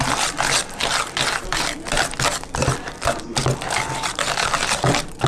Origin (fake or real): real